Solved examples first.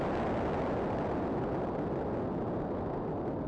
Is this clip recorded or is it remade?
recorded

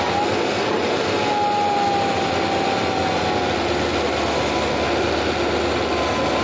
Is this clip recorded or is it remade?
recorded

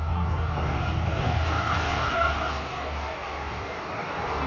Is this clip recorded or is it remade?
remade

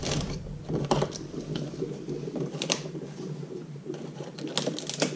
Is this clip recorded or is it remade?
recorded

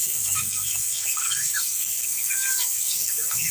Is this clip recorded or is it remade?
remade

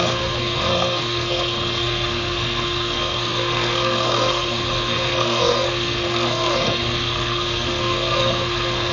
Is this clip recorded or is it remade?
remade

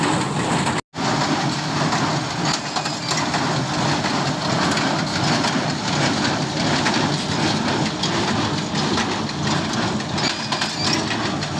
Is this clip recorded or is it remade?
recorded